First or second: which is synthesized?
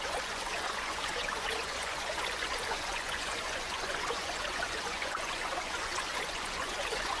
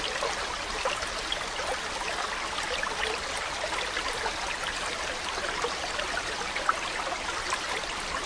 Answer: first